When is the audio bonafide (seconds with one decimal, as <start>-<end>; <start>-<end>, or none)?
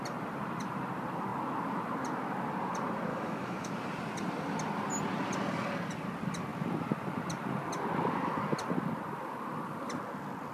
0.0-3.1; 3.7-10.5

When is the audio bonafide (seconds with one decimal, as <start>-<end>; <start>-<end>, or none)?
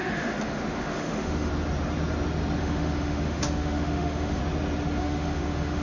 1.5-2.6; 4.4-5.0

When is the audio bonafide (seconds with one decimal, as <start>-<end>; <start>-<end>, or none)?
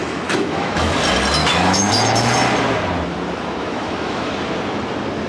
0.9-1.4; 1.9-3.6; 4.4-5.3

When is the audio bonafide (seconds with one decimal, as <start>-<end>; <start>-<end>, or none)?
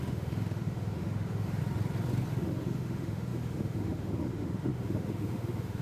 1.6-2.4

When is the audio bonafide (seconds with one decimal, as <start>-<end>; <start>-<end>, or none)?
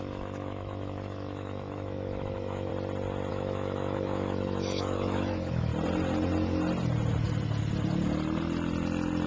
2.7-3.3; 5.7-9.3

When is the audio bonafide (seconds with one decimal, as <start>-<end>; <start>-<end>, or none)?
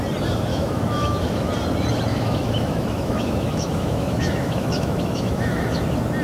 0.0-0.5; 1.5-2.1; 5.8-6.2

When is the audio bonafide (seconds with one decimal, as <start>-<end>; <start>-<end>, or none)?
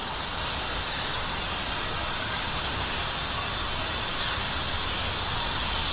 0.0-2.4; 2.9-5.9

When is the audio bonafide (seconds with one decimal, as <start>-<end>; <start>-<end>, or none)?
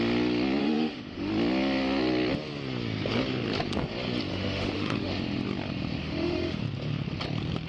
0.0-0.6; 1.3-4.3; 5.1-6.0; 6.6-7.7